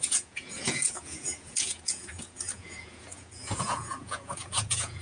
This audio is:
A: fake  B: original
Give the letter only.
A